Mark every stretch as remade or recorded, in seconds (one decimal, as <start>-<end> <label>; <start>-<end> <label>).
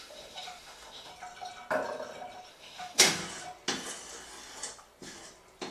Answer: 0.0-1.1 remade; 1.1-2.5 recorded; 2.5-3.2 remade; 3.2-5.7 recorded